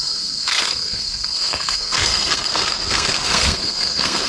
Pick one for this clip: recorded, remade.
remade